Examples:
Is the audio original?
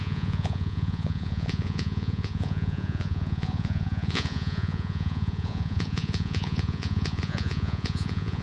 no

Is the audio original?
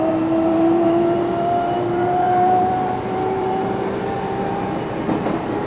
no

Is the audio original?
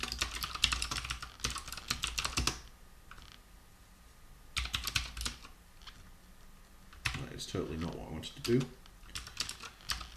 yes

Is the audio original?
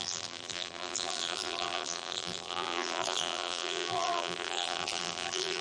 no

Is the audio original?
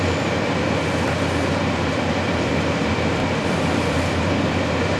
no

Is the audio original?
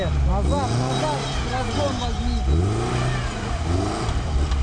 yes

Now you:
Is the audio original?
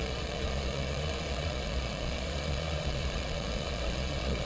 no